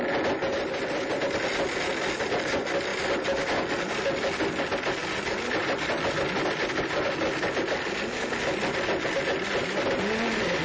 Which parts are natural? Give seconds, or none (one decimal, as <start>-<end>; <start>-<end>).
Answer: 0.0-10.6